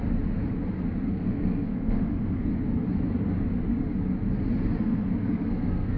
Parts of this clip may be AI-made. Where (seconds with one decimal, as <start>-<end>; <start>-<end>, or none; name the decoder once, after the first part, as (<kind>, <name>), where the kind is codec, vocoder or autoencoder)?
1.1-2.5 (codec, SNAC); 4.8-6.0